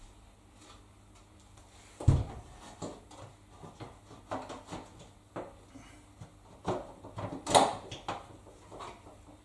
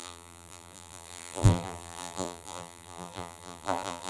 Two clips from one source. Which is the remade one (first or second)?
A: second